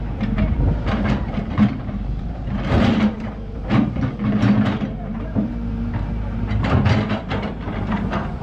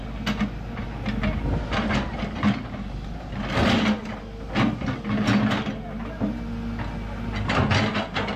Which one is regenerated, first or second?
first